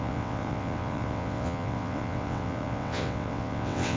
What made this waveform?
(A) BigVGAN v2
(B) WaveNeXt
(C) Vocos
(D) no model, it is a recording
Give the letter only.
B